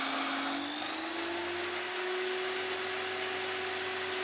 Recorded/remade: recorded